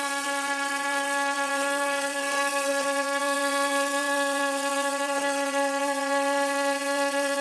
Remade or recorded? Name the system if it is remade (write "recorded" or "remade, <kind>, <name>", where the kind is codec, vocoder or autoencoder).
remade, vocoder, WaveNeXt